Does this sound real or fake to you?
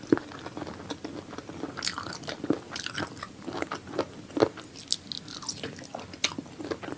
real